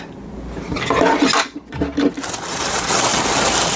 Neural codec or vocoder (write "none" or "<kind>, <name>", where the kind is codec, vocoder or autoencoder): none